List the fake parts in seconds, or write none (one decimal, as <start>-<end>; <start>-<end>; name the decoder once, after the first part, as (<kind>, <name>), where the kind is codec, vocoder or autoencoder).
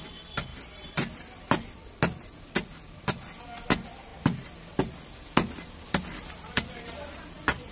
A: none